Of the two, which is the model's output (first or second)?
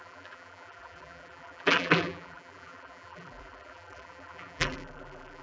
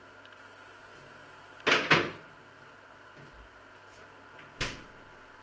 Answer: first